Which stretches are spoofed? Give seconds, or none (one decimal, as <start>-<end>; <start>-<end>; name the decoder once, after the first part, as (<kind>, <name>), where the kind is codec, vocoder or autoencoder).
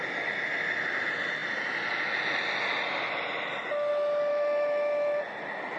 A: 4.3-5.2 (autoencoder, DAC-VAE)